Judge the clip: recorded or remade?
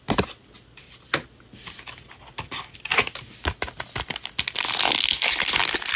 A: recorded